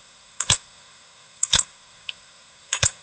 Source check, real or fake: fake